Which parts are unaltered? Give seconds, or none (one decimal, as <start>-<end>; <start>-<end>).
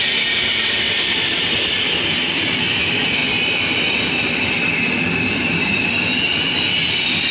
0.0-7.3